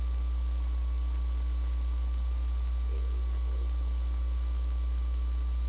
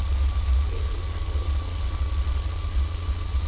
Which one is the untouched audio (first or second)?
first